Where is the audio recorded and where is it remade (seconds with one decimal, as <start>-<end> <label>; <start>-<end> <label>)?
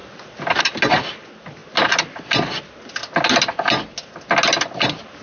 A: 0.0-5.2 recorded